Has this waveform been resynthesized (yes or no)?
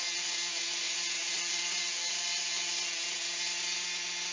no